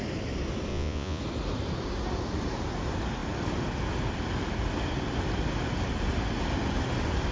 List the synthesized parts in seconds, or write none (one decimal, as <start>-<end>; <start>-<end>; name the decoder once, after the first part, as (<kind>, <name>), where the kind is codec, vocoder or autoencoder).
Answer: 0.7-1.2 (vocoder, Vocos)

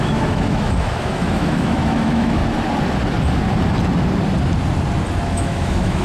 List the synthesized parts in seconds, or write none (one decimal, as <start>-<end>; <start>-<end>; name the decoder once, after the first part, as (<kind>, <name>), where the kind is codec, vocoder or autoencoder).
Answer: 0.0-2.4 (autoencoder, DAC-VAE); 5.2-6.0

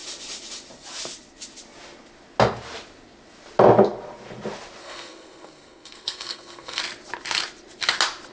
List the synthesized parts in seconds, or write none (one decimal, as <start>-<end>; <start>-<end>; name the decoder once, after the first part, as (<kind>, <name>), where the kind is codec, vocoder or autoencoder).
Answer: 4.8-6.8 (codec, SNAC)

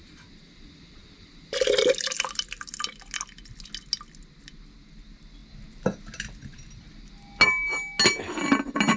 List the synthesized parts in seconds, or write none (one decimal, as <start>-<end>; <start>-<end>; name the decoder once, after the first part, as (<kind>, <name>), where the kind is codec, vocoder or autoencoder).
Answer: none

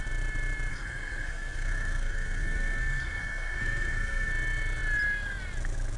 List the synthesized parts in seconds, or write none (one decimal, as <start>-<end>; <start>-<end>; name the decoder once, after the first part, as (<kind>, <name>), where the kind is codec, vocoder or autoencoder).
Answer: 0.7-4.3 (codec, SNAC)

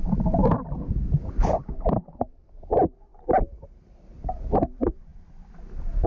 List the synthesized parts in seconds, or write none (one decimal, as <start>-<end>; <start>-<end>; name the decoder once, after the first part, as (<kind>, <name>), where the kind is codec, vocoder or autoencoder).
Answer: 0.0-0.4 (vocoder, BigVGAN v2); 1.1-6.1

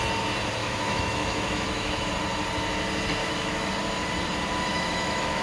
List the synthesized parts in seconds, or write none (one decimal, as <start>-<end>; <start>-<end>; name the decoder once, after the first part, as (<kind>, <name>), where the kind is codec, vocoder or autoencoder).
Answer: 0.6-2.1 (autoencoder, DAC-VAE); 3.2-3.7; 4.7-5.4